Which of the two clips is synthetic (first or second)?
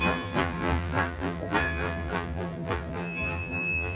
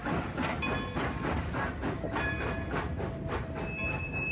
first